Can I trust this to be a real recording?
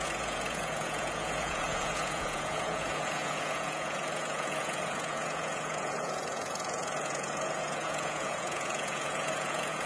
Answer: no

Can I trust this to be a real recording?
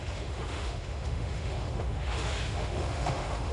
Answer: no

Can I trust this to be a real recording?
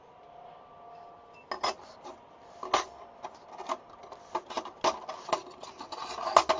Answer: yes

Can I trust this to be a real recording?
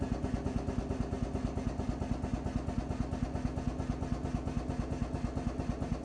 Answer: yes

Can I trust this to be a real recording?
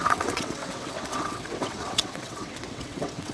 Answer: no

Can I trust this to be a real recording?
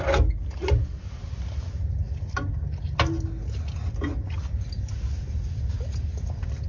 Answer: yes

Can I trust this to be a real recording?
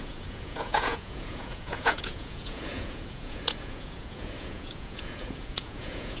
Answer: no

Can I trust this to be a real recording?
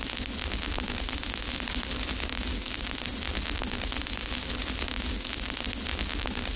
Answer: yes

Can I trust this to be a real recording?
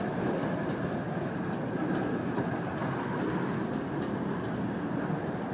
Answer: yes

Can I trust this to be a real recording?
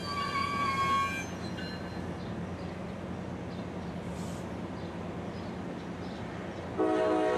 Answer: yes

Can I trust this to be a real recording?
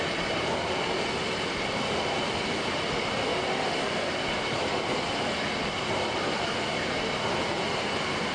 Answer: yes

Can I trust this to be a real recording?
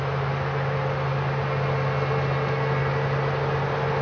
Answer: yes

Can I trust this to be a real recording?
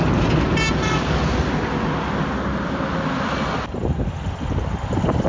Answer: yes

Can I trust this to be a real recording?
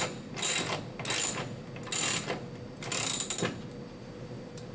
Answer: yes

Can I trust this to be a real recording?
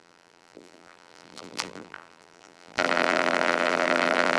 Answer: no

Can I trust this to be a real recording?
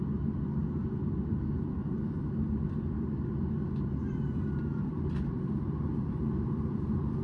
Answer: no